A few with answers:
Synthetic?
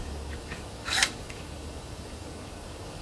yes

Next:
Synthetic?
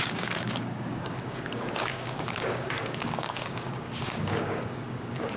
yes